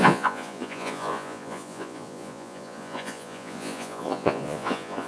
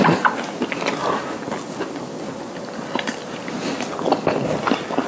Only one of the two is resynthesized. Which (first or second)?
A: first